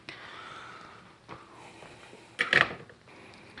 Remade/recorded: recorded